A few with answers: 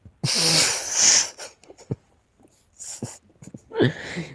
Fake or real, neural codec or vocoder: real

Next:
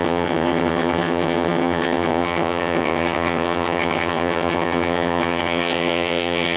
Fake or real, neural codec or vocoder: fake, vocoder, HiFi-GAN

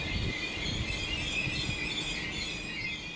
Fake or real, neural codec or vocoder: real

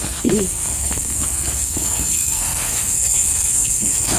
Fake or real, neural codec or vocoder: fake, codec, SNAC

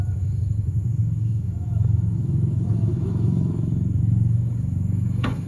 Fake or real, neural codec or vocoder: fake, autoencoder, DAC-VAE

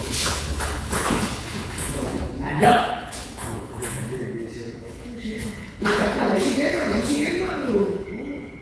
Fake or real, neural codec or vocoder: fake, codec, HILCodec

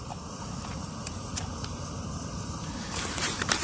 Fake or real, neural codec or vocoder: fake, vocoder, BigVGAN v2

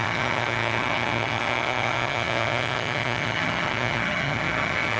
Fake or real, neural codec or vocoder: fake, vocoder, HiFi-GAN